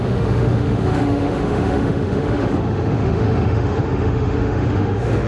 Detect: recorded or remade remade